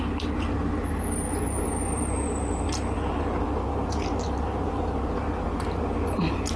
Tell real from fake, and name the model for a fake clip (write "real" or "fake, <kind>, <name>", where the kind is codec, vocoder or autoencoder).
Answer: real